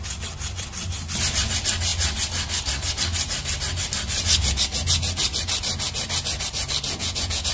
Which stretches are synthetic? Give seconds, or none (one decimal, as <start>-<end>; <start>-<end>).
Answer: 7.0-7.5